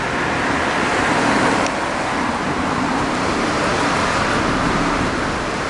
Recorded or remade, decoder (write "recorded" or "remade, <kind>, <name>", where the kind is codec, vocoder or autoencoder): recorded